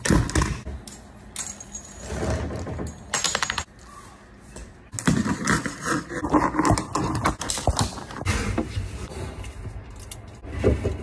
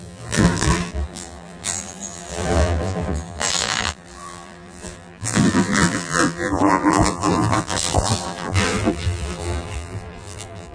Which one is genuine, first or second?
first